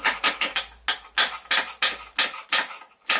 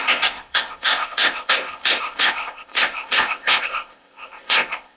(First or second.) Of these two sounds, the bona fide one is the first